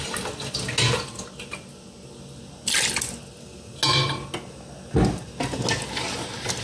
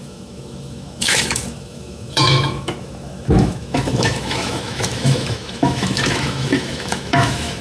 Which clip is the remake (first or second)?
second